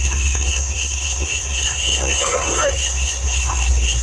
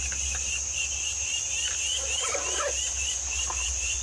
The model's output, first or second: first